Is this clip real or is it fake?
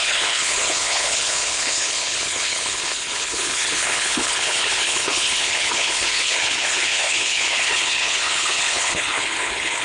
fake